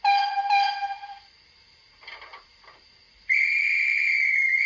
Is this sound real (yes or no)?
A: no